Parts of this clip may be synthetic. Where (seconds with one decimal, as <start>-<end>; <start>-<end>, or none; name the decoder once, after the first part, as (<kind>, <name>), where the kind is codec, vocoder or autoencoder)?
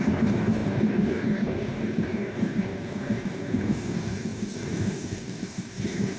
0.0-6.2 (codec, DAC)